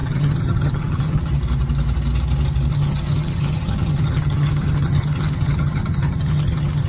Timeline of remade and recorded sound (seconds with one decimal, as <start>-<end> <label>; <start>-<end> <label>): 0.0-1.3 remade; 1.3-2.7 recorded; 2.7-6.9 remade